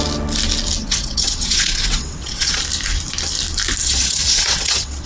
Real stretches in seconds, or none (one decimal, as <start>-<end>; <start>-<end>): 0.0-0.8; 2.6-3.8

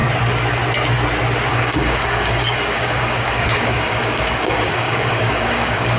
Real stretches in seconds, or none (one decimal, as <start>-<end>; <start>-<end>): 0.0-1.5